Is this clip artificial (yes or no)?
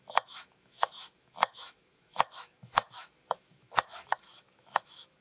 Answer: yes